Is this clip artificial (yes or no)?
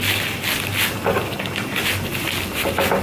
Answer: no